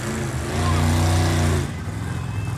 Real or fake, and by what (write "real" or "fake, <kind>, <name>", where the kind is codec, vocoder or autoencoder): real